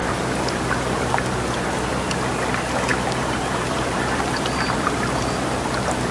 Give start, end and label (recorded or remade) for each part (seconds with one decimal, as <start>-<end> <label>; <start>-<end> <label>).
0.0-1.1 remade; 1.1-2.9 recorded; 2.9-6.1 remade